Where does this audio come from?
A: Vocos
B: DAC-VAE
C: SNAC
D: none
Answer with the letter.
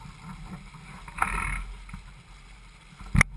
D